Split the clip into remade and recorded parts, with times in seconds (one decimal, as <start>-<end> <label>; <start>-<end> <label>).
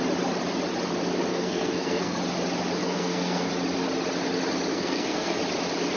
0.0-1.3 recorded; 1.3-2.2 remade; 2.2-2.8 recorded; 2.8-3.5 remade; 3.5-4.7 recorded; 4.7-5.4 remade; 5.4-6.0 recorded